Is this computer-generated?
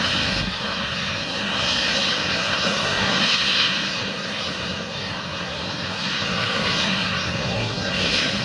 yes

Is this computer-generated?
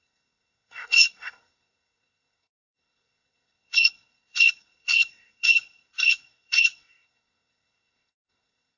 yes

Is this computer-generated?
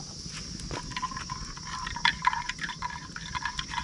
no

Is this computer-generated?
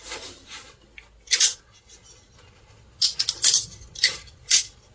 no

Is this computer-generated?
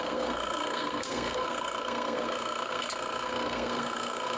yes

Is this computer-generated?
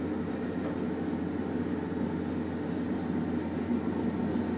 no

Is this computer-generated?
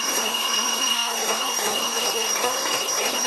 yes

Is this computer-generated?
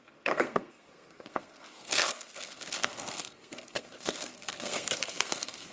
yes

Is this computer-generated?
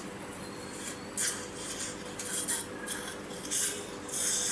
no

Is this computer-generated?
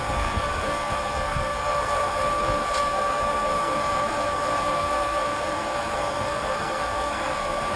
yes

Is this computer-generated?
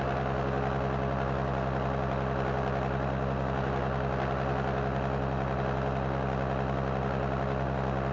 no